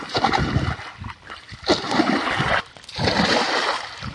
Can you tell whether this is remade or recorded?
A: recorded